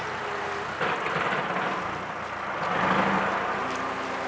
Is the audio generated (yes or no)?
no